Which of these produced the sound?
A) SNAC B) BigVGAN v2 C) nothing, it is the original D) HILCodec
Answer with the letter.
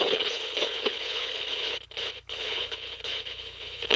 D